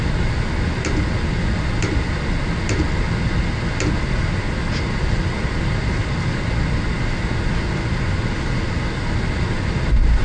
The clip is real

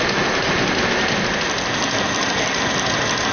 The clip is real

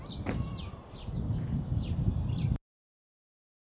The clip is real